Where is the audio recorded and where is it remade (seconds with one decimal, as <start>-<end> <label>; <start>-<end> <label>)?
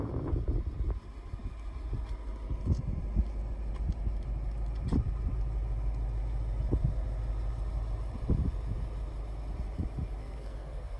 0.0-10.2 recorded; 10.2-11.0 remade